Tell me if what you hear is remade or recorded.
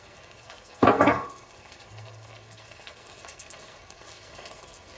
remade